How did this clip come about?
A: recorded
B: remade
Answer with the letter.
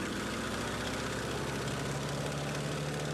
A